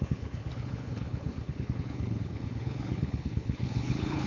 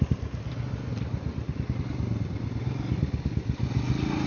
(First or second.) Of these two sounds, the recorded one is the second